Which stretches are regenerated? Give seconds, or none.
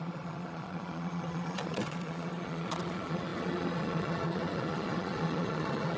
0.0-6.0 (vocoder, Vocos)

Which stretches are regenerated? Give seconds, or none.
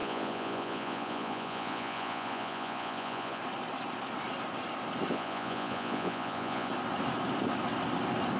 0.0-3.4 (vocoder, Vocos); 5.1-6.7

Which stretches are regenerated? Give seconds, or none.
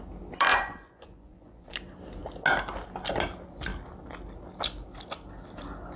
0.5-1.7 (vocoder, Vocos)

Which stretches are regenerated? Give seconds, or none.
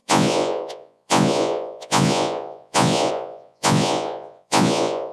0.0-5.1 (vocoder, Vocos)